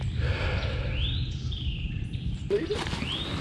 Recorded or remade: recorded